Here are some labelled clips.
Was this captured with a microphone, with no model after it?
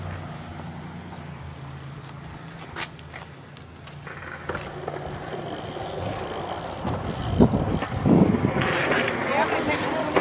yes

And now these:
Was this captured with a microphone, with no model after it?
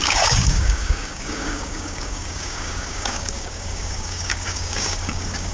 no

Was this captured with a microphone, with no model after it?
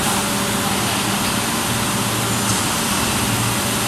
yes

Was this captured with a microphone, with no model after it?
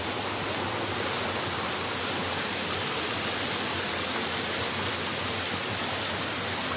yes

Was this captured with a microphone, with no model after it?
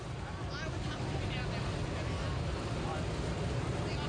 yes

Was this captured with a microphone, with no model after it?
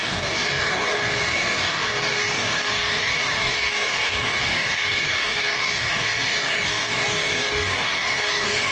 no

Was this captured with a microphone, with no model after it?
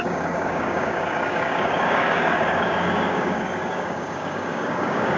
no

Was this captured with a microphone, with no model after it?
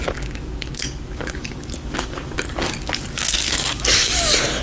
no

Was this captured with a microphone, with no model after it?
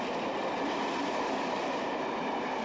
yes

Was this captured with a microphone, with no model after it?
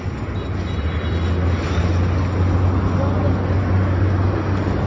yes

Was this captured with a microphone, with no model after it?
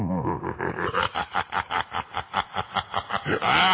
yes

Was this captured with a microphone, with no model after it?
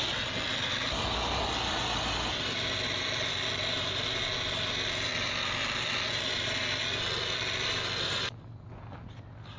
yes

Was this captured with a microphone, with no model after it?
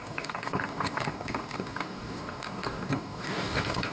no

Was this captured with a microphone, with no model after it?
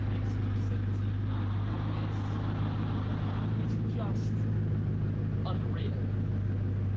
yes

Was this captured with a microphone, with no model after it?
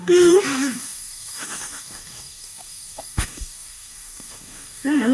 no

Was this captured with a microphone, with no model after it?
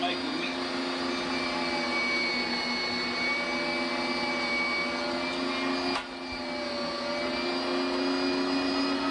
yes